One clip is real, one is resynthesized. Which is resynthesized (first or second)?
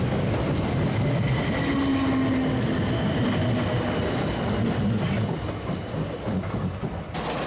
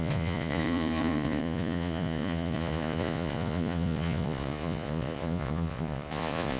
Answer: second